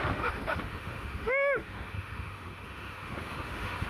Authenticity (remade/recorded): remade